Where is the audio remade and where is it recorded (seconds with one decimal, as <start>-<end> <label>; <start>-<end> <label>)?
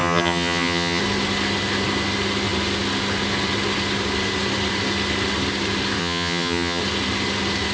0.0-1.0 remade; 1.0-6.0 recorded; 6.0-6.8 remade; 6.8-7.7 recorded